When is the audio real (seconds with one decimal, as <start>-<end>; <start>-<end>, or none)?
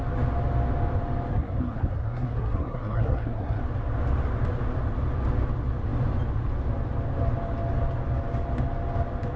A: 0.0-1.3; 3.6-9.4